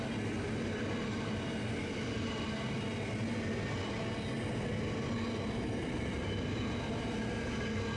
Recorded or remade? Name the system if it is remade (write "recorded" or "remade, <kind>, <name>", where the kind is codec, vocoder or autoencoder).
recorded